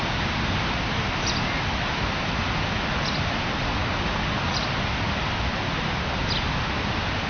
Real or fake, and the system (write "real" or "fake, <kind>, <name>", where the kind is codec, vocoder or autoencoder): real